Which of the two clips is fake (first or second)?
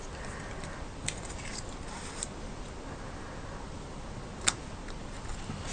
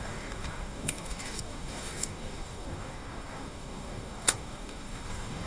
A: second